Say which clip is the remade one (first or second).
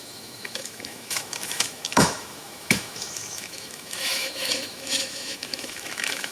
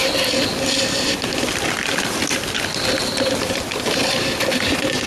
first